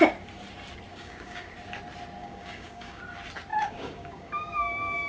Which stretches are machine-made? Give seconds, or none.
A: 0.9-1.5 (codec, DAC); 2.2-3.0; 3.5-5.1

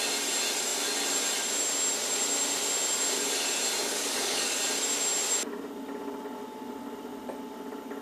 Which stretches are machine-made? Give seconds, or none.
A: 3.8-4.6 (codec, DAC)